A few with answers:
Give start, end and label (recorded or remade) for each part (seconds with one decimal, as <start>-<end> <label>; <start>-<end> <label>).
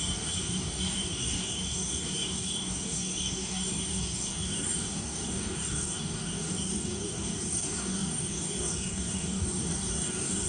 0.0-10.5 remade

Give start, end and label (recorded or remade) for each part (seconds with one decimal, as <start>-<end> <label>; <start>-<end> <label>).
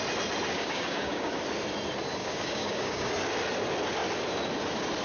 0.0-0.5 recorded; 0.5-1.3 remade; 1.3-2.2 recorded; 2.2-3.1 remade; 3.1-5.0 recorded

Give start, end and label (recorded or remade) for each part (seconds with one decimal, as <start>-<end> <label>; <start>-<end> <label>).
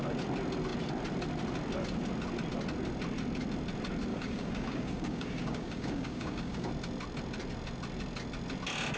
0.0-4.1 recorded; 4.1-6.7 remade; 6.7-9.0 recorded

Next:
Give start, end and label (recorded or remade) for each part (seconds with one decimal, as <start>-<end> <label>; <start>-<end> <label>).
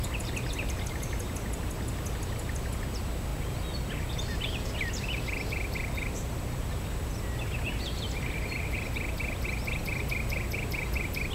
0.0-11.3 recorded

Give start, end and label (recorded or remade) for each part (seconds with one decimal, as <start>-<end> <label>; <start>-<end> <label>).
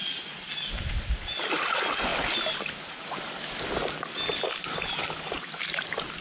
0.0-6.2 recorded